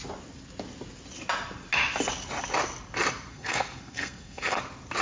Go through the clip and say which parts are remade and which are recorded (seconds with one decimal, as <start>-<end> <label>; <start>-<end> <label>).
0.0-3.3 recorded; 3.3-4.6 remade; 4.6-5.0 recorded